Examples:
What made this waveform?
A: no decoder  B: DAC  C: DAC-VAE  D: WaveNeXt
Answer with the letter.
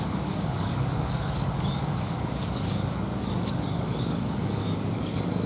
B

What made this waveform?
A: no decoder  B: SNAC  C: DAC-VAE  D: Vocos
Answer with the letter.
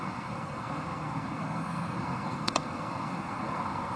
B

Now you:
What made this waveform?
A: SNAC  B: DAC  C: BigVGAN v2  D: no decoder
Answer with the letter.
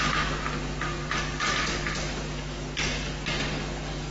B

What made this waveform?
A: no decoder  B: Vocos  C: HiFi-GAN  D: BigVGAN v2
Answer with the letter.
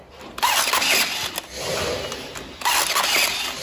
A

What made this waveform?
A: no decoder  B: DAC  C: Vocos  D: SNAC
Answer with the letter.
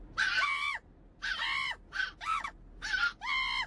A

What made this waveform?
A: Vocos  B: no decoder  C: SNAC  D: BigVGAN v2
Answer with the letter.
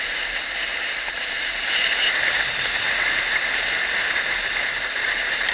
D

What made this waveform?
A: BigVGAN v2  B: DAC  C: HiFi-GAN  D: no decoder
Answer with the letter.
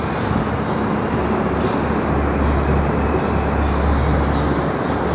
D